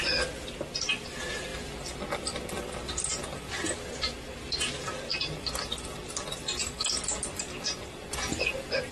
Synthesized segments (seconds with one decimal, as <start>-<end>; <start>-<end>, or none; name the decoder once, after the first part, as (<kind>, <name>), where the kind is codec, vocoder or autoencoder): none

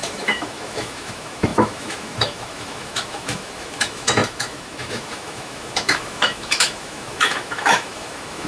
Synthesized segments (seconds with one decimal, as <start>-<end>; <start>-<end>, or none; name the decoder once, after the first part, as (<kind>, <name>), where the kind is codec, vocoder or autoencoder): 0.0-8.5 (autoencoder, DAC-VAE)